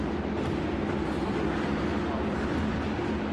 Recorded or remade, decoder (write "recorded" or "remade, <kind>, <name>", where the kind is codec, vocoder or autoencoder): recorded